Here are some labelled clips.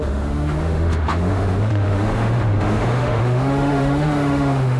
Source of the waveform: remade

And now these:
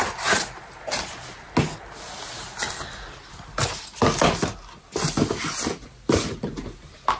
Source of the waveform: recorded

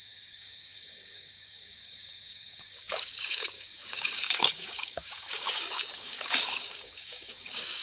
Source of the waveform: remade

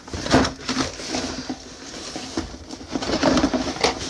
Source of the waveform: recorded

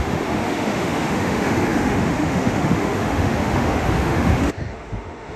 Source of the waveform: remade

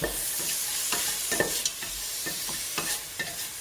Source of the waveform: remade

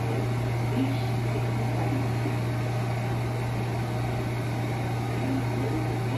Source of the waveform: recorded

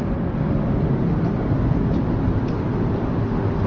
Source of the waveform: recorded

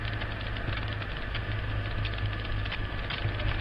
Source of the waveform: recorded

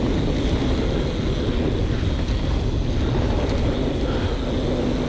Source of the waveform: recorded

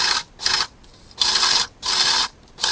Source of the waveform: recorded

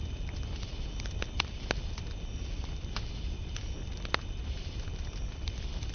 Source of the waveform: recorded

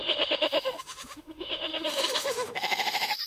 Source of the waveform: remade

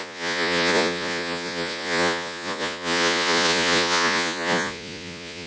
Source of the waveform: remade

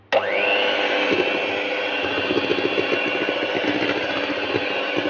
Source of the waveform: recorded